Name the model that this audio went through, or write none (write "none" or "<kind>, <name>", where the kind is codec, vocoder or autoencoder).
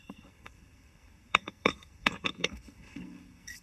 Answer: codec, SNAC